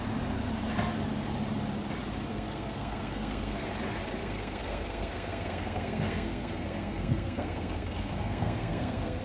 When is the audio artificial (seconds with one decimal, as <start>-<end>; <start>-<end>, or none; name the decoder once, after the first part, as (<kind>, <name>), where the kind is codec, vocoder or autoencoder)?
2.3-3.7 (codec, SNAC); 4.2-9.2